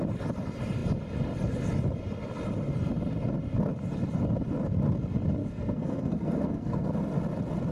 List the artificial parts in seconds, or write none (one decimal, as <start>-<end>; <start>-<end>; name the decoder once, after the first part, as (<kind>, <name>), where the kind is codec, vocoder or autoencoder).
5.4-7.0 (codec, SNAC)